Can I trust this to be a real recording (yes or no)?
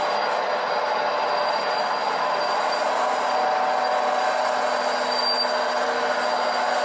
yes